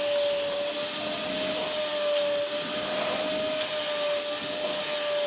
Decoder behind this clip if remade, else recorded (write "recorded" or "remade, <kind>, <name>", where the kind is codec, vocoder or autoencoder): recorded